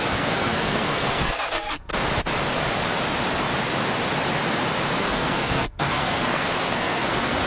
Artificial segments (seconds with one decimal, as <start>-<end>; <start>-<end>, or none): 0.0-1.9; 5.0-7.5